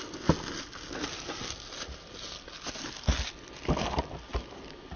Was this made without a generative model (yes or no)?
yes